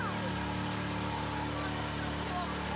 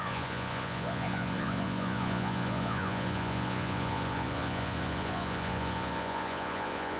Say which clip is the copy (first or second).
second